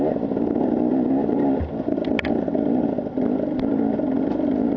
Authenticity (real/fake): real